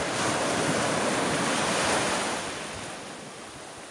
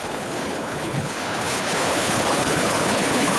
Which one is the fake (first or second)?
second